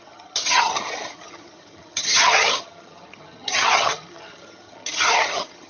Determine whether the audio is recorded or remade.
remade